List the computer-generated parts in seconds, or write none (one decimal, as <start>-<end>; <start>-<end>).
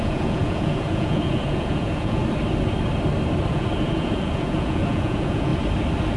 0.0-2.2; 3.5-5.5